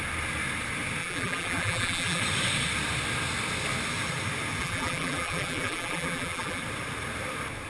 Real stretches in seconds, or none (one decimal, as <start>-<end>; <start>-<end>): 0.0-1.0; 2.2-4.6; 6.6-7.7